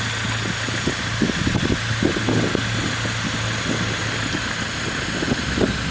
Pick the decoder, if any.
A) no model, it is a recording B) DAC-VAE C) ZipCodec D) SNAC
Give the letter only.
A